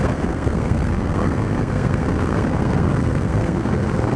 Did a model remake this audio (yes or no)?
yes